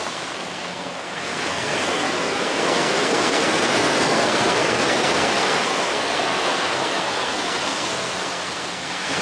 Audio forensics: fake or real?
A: fake